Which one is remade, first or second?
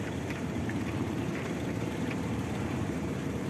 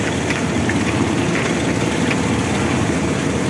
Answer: first